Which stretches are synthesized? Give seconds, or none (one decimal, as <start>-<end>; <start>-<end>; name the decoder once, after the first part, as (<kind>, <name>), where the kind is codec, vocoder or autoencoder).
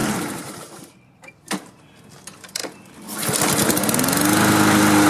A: 0.0-1.8 (vocoder, BigVGAN v2)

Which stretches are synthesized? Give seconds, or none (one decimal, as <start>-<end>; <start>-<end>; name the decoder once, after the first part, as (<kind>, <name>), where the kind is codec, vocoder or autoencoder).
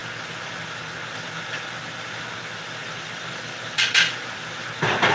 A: 2.8-4.5 (vocoder, BigVGAN v2)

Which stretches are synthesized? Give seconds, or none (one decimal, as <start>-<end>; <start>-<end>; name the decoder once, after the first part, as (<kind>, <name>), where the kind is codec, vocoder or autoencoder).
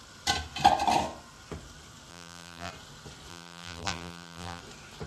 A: 2.1-2.7 (vocoder, BigVGAN v2); 3.3-4.6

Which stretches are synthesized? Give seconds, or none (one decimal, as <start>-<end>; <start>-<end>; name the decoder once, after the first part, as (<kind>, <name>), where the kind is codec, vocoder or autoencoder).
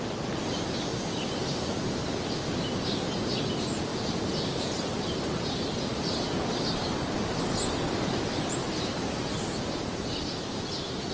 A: 0.9-2.0 (vocoder, BigVGAN v2); 3.9-7.1; 8.6-11.1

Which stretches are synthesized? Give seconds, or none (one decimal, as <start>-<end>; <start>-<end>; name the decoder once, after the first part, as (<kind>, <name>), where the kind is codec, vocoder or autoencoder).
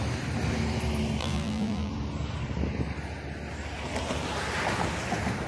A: 1.2-1.9 (vocoder, BigVGAN v2)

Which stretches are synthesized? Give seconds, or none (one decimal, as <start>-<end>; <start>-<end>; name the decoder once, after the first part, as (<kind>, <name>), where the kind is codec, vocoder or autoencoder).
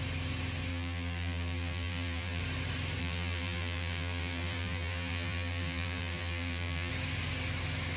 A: 0.7-2.4 (vocoder, BigVGAN v2); 3.0-6.9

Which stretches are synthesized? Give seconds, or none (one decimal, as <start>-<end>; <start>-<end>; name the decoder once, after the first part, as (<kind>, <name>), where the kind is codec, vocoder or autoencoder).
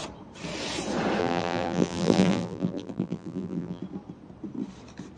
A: 1.2-3.8 (vocoder, BigVGAN v2)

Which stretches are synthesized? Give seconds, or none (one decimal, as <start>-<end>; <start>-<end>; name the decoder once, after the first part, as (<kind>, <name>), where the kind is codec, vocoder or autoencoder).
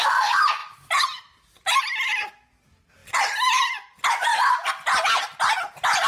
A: 0.6-1.8 (vocoder, BigVGAN v2); 3.0-3.6; 4.3-4.9